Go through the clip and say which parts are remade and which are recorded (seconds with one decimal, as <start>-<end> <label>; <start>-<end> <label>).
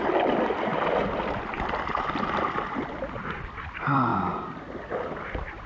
0.0-0.7 remade; 0.7-1.4 recorded; 1.4-5.7 remade